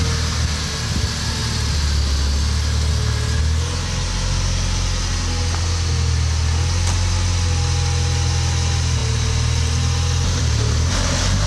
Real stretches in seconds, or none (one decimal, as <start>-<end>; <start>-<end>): 0.0-11.5